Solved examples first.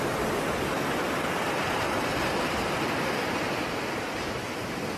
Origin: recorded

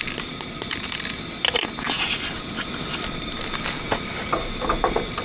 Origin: recorded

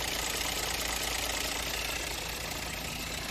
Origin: recorded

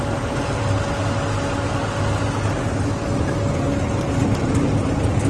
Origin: recorded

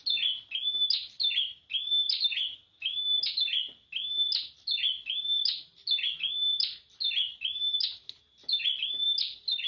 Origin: recorded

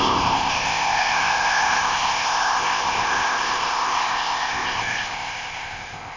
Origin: remade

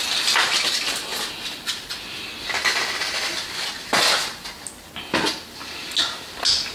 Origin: recorded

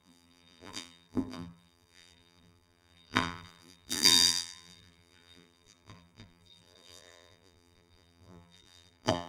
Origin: remade